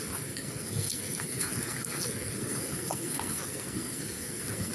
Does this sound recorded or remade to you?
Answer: remade